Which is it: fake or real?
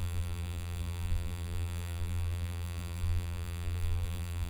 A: fake